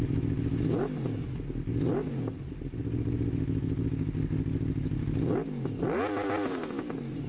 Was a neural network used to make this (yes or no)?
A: no